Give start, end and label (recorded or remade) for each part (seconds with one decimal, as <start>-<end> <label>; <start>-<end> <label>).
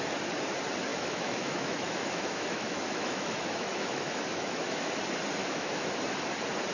0.0-0.9 recorded; 0.9-4.9 remade; 4.9-5.4 recorded; 5.4-5.9 remade; 5.9-6.7 recorded